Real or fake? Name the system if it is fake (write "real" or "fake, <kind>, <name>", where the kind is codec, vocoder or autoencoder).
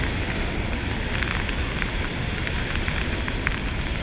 real